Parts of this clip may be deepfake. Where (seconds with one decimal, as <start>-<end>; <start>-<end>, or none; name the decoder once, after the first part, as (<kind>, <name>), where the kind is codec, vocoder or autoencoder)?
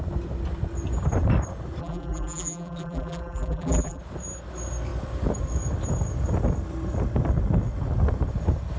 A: 1.8-4.0 (vocoder, BigVGAN v2)